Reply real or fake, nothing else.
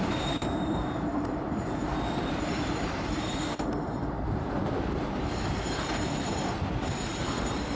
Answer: fake